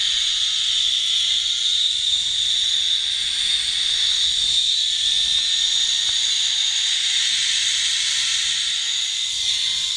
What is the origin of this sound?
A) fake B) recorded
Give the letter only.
B